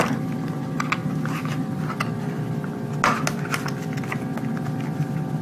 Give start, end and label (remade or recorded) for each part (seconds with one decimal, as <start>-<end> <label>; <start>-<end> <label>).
0.0-5.4 recorded